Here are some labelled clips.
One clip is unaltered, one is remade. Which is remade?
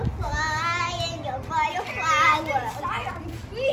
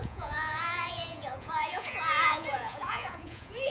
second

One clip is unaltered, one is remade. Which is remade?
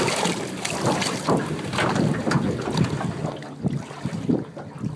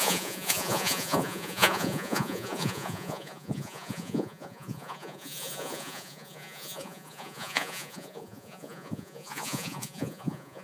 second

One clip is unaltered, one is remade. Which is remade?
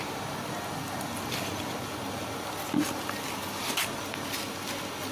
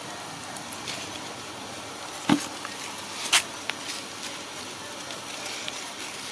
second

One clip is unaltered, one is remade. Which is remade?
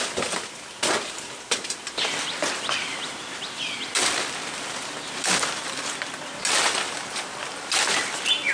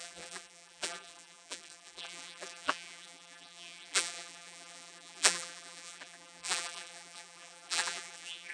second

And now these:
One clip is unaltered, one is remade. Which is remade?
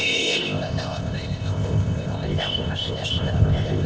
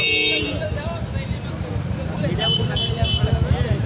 first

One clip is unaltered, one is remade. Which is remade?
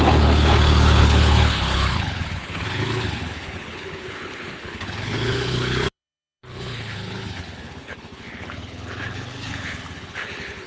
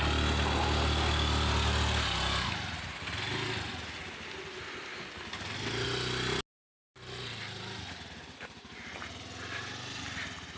first